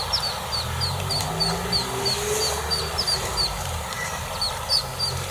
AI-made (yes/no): no